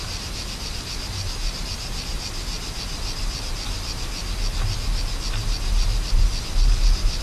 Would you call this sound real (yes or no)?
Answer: yes